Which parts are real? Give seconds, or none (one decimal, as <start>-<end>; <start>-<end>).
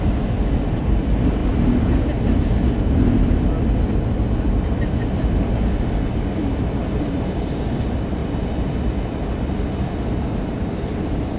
1.4-6.6; 8.2-10.2